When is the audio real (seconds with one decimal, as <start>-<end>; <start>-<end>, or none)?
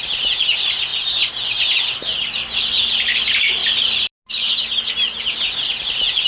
0.0-6.3